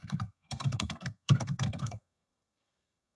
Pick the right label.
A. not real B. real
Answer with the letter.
A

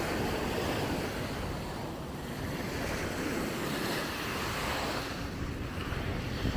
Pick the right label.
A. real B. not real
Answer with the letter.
A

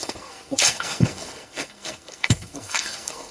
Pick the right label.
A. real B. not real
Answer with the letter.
B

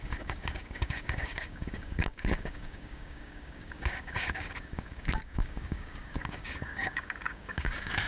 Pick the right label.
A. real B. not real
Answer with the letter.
B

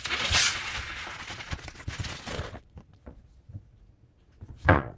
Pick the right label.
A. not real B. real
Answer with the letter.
A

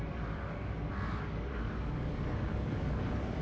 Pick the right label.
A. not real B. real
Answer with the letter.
A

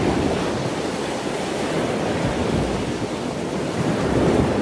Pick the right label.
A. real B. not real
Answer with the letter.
B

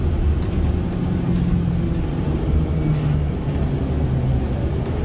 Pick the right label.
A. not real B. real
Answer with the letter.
B